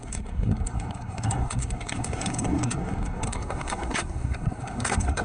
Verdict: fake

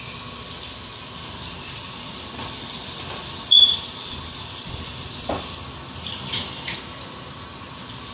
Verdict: real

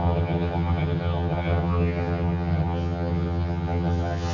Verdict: fake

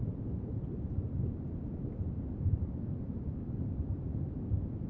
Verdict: real